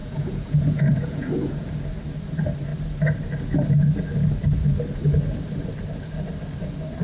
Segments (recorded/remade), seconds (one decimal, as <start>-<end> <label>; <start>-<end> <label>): 0.0-1.8 remade; 1.8-7.0 recorded